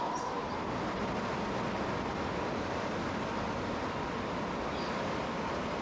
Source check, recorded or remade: recorded